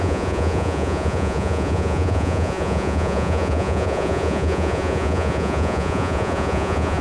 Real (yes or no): no